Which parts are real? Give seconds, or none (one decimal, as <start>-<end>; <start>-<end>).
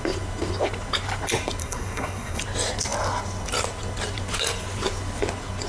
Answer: 0.0-1.6; 2.4-5.7